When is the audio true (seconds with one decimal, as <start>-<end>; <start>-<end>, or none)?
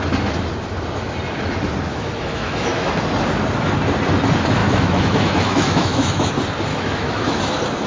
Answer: 0.0-1.9; 2.9-4.6; 6.3-6.7; 7.4-7.9